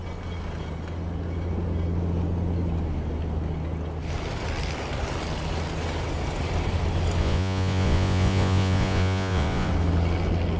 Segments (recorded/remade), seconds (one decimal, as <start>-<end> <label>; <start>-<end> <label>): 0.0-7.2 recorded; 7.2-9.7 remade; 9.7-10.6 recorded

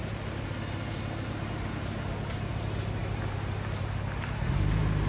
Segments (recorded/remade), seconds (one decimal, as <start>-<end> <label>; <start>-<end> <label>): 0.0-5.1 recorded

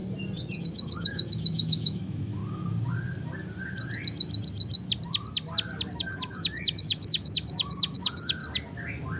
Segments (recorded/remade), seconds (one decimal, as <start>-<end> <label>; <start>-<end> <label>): 0.0-0.6 recorded; 0.6-2.4 remade; 2.4-6.0 recorded; 6.0-8.4 remade; 8.4-9.2 recorded

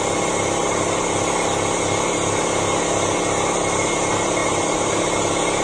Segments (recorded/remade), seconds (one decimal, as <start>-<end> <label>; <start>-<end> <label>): 0.0-4.4 recorded; 4.4-5.0 remade; 5.0-5.6 recorded